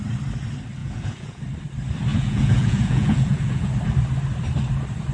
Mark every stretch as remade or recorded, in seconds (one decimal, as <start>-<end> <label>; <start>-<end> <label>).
0.0-0.8 recorded; 0.8-1.4 remade; 1.4-2.1 recorded; 2.1-3.7 remade; 3.7-5.1 recorded